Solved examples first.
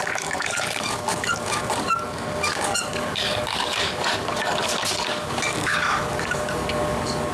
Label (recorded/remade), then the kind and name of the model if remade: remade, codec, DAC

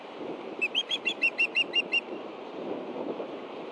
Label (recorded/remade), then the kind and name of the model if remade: remade, vocoder, BigVGAN v2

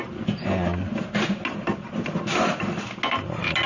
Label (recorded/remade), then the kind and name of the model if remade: recorded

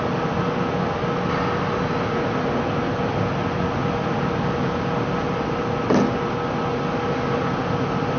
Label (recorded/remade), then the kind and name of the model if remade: recorded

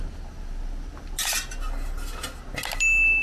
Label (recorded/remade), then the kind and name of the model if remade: recorded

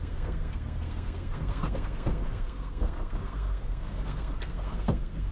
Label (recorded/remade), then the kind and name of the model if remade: remade, codec, SNAC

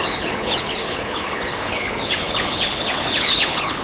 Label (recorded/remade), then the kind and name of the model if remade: remade, codec, HILCodec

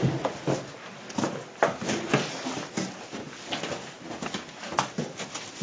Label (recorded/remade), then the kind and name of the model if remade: recorded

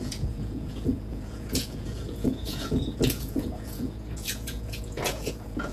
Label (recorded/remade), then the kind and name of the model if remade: remade, vocoder, Vocos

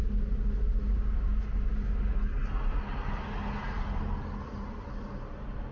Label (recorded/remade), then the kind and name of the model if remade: recorded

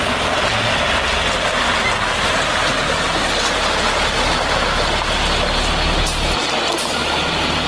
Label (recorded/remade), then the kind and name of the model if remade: recorded